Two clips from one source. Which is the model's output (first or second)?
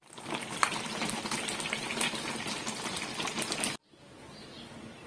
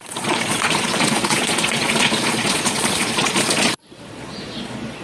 second